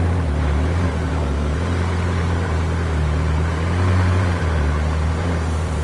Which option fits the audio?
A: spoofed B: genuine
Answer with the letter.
A